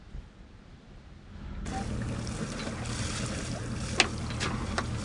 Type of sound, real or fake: real